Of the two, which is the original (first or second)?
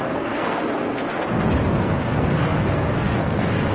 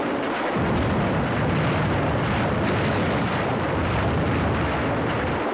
second